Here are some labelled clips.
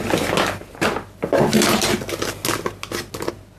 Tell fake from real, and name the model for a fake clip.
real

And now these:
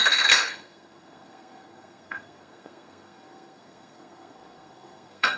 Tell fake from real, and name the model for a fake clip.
fake, codec, SNAC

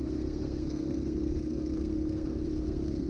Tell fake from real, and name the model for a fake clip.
fake, codec, SNAC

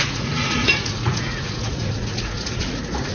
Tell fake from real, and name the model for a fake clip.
fake, vocoder, Vocos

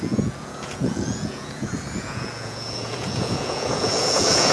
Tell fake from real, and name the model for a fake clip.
fake, vocoder, Vocos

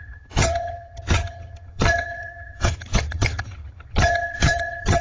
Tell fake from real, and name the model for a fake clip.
fake, vocoder, HiFi-GAN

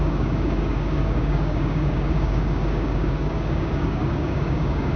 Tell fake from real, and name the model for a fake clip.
fake, codec, DAC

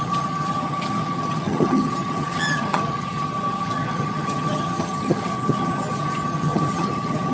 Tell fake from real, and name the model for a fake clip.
fake, vocoder, HiFi-GAN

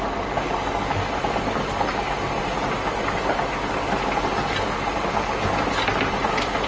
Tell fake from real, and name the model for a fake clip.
real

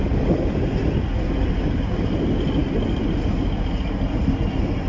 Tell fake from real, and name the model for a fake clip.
real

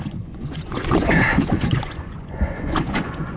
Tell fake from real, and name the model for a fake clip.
fake, vocoder, Vocos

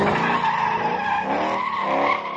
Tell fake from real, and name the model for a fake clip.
real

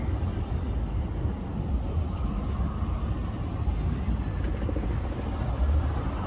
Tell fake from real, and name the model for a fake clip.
real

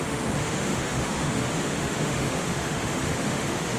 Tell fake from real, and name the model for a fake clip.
fake, autoencoder, DAC-VAE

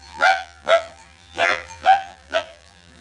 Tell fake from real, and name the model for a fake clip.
fake, vocoder, BigVGAN v2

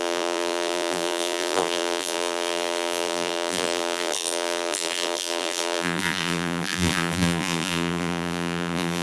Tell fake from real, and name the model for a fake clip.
fake, vocoder, BigVGAN v2